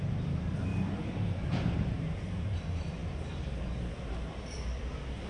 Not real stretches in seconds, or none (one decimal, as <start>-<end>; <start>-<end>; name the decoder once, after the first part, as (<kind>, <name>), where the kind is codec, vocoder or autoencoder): 0.0-5.3 (vocoder, BigVGAN v2)